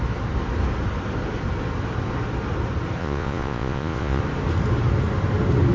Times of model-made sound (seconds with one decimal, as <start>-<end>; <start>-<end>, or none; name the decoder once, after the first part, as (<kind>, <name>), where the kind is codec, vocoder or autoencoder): 3.0-4.2 (vocoder, Vocos)